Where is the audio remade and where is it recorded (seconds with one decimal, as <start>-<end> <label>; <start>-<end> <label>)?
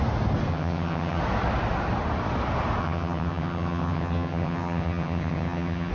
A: 0.0-0.5 recorded; 0.5-1.2 remade; 1.2-2.8 recorded; 2.8-5.9 remade